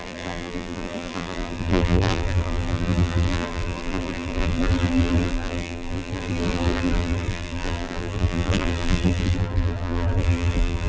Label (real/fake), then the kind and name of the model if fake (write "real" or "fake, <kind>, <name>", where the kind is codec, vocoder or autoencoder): fake, vocoder, BigVGAN v2